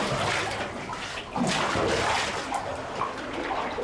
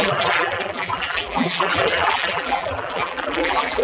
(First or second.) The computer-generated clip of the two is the second